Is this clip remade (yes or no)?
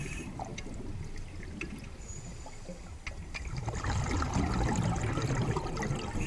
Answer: no